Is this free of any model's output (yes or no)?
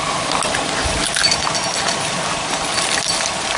yes